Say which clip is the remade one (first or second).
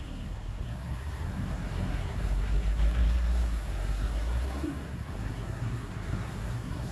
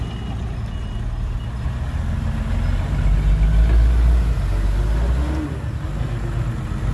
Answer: first